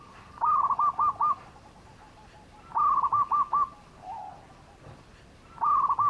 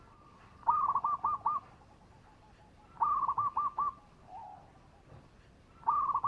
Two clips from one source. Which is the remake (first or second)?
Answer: second